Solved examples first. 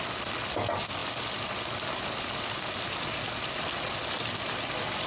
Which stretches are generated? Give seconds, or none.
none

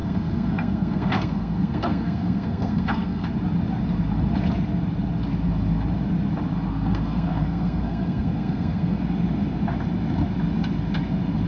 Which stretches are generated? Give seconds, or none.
0.0-3.3 (codec, SNAC); 6.7-9.0

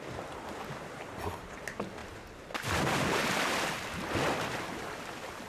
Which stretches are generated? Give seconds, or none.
none

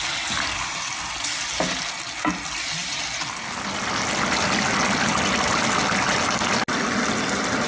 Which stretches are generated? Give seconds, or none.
none

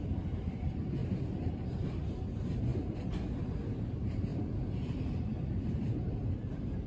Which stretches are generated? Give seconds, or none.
none